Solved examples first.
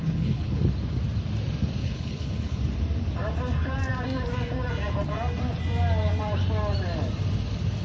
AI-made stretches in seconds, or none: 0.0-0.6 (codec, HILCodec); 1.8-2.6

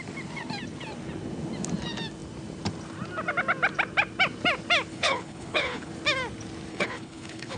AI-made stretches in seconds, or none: 4.9-5.9 (codec, HILCodec); 6.7-7.6

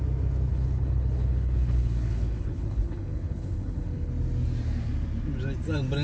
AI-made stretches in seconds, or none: 0.5-4.1 (codec, HILCodec)

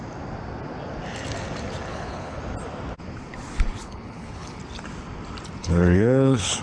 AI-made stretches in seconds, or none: 1.9-2.4 (codec, HILCodec); 3.8-4.6; 5.6-6.6

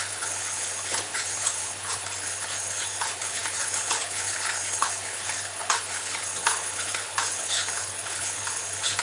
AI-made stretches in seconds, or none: 0.0-9.0 (codec, HILCodec)

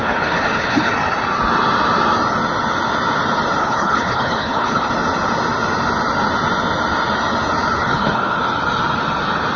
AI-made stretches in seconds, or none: 0.0-0.9 (codec, HILCodec); 3.6-4.9; 7.8-8.4

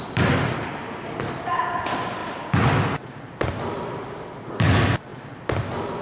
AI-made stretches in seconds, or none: none